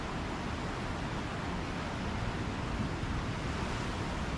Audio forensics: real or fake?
real